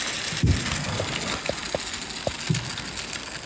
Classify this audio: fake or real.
real